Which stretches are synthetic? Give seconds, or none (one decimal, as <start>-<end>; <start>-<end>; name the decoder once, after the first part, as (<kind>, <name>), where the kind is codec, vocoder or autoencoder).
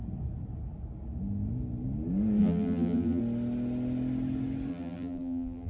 2.4-3.2 (vocoder, BigVGAN v2); 4.7-5.7